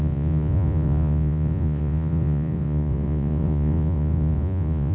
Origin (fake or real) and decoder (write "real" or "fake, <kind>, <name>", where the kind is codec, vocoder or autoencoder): fake, vocoder, Vocos